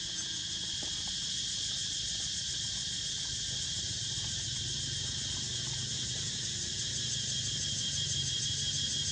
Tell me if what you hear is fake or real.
real